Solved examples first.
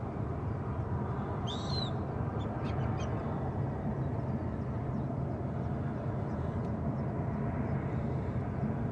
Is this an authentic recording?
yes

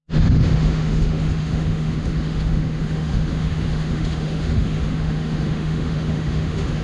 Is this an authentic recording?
no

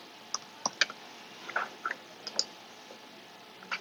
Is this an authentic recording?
yes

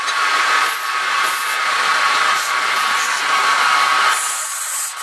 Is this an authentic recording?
yes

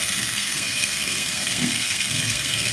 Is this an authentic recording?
no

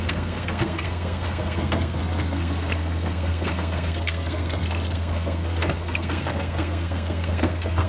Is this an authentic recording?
no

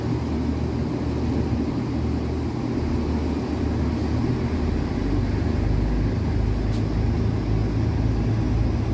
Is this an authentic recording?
yes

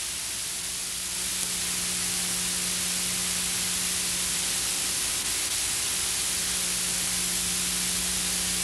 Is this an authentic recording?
yes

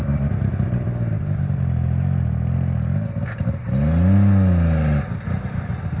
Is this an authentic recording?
yes